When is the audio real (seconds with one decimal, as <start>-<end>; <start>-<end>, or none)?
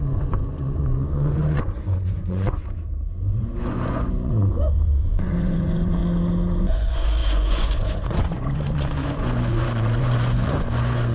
2.6-3.3; 6.0-6.6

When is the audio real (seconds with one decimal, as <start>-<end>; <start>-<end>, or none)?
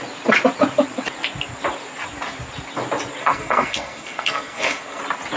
0.0-3.2; 5.0-5.4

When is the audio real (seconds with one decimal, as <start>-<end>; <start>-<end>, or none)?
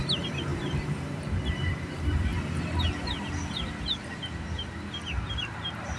2.3-5.3